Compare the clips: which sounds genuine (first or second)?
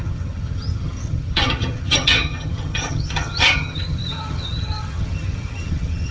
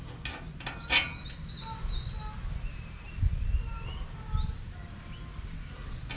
second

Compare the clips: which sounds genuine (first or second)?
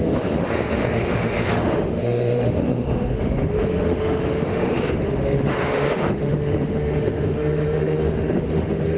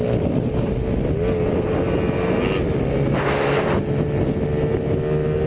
second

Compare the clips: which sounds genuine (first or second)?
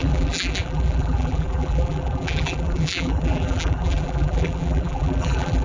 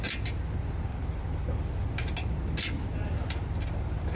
second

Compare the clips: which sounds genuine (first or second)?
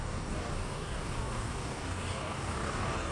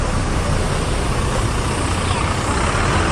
second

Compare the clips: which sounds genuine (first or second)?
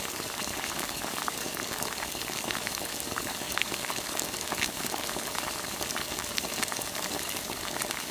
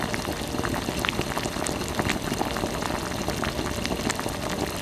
second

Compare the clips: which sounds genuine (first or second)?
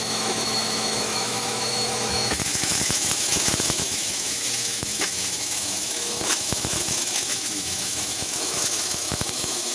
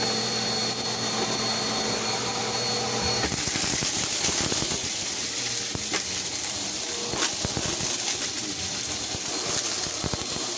second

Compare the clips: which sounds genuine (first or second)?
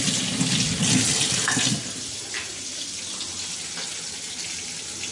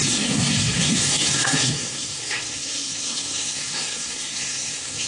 first